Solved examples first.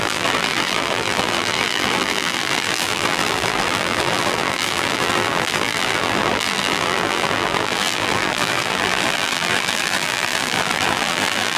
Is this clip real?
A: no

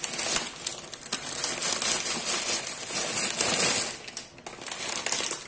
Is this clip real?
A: yes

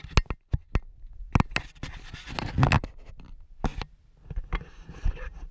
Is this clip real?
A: yes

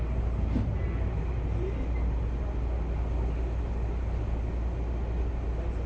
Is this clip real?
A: yes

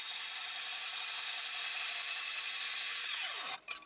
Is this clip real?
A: yes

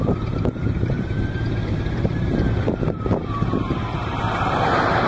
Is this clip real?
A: no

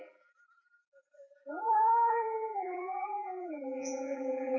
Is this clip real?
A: no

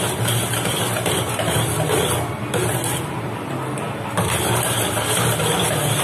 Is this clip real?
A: yes